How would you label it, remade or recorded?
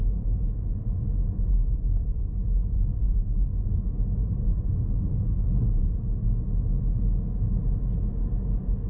recorded